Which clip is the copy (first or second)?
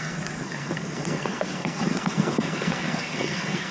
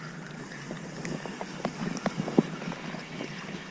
first